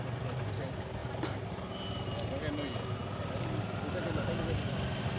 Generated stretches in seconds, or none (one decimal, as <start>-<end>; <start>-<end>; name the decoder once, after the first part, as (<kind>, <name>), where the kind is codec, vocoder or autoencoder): none